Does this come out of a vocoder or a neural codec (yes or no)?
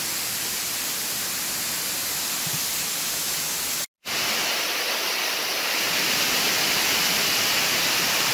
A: no